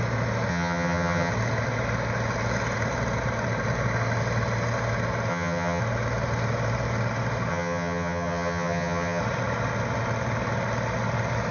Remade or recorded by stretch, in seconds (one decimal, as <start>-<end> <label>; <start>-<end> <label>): 0.0-0.5 recorded; 0.5-1.3 remade; 1.3-5.3 recorded; 5.3-5.8 remade; 5.8-7.5 recorded; 7.5-9.2 remade; 9.2-11.5 recorded